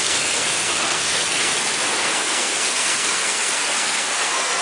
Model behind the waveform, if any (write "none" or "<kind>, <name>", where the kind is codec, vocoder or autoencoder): codec, SNAC